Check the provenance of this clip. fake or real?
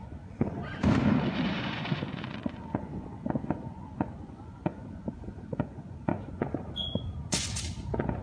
fake